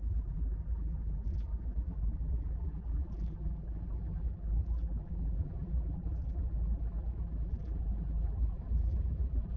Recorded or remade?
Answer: remade